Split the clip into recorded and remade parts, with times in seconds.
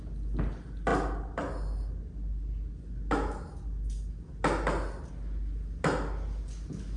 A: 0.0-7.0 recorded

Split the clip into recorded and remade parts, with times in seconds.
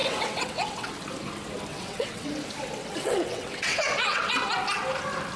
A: 0.0-0.9 remade; 0.9-1.7 recorded; 1.7-2.3 remade; 2.3-2.8 recorded; 2.8-4.5 remade; 4.5-5.4 recorded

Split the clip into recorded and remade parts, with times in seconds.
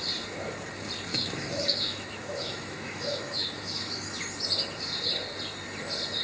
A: 0.0-1.1 recorded; 1.1-4.2 remade; 4.2-6.2 recorded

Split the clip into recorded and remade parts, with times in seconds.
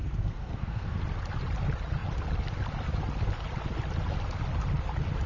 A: 0.0-1.0 remade; 1.0-5.3 recorded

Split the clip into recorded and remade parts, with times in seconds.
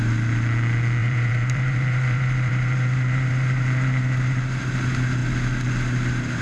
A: 0.0-1.0 recorded; 1.0-4.6 remade; 4.6-6.4 recorded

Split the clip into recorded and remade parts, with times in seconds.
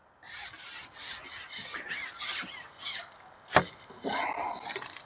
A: 0.0-5.1 recorded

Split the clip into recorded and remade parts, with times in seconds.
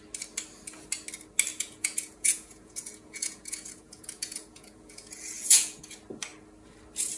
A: 0.0-1.5 recorded; 1.5-5.8 remade; 5.8-7.2 recorded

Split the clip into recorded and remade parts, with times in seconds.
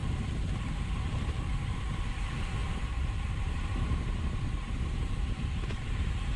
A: 0.0-2.6 recorded; 2.6-6.4 remade